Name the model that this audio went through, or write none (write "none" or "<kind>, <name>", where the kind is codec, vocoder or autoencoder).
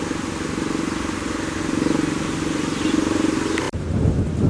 none